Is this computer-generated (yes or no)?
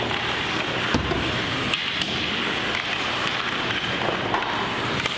no